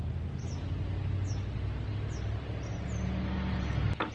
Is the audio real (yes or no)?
yes